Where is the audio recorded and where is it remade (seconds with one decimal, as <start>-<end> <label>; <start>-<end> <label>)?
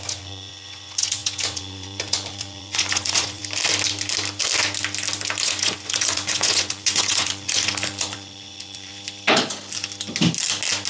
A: 0.0-3.4 remade; 3.4-5.4 recorded; 5.4-8.9 remade; 8.9-10.9 recorded